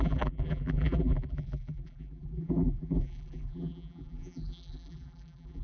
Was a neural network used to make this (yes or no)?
yes